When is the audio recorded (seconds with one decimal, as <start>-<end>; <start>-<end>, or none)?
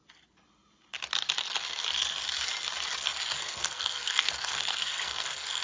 0.0-3.4